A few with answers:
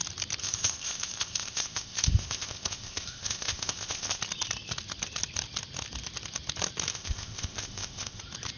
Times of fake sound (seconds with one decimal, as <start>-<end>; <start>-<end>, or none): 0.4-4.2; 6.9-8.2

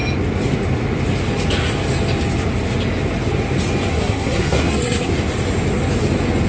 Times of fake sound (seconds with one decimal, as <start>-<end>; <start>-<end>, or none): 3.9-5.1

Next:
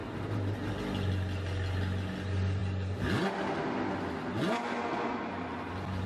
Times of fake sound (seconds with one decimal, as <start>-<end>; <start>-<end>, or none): 0.0-0.7

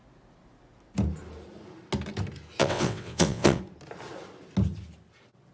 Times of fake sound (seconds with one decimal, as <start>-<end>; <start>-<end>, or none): 2.6-3.6

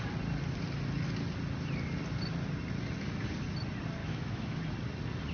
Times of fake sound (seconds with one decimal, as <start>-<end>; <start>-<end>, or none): 4.0-4.6